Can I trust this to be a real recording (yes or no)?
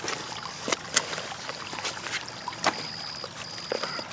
yes